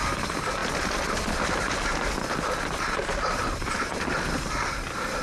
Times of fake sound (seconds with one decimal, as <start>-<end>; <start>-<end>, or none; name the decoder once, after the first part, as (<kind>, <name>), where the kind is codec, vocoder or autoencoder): none